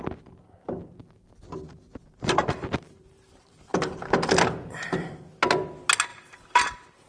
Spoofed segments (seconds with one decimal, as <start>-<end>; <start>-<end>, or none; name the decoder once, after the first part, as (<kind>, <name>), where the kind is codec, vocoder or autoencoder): 1.0-5.3 (vocoder, BigVGAN v2); 6.1-6.6